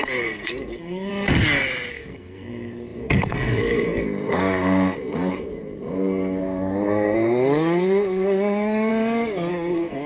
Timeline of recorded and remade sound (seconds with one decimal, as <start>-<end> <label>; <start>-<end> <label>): 0.0-1.1 remade; 1.1-1.9 recorded; 1.9-8.9 remade; 8.9-9.5 recorded; 9.5-10.1 remade